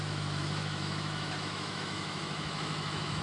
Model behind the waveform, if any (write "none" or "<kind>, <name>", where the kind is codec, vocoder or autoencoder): autoencoder, DAC-VAE